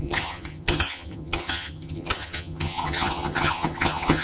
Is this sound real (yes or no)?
no